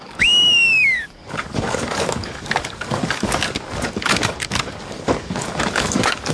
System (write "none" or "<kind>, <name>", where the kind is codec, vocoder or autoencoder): codec, DAC